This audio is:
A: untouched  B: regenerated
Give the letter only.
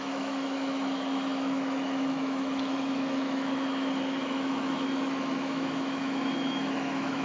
B